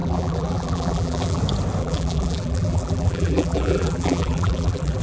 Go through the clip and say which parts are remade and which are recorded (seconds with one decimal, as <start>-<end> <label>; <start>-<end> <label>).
0.0-1.4 remade; 1.4-1.8 recorded; 1.8-5.0 remade